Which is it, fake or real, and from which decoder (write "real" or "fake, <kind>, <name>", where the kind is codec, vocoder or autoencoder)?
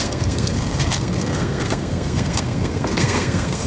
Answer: fake, codec, SNAC